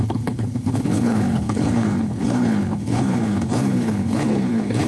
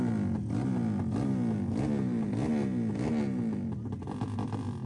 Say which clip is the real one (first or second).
second